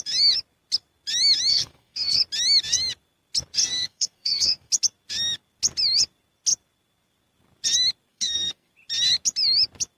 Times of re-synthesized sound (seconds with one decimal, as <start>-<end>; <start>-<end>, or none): 1.5-2.2; 3.6-4.7; 8.1-8.7